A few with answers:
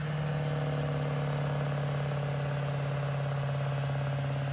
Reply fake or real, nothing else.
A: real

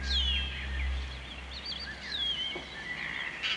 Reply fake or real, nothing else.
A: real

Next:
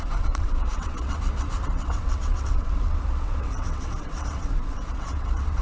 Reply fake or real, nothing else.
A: fake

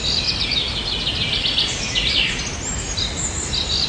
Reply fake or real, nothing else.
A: real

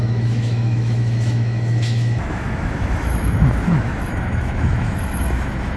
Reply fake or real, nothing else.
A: fake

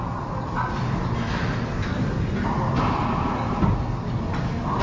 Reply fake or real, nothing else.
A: real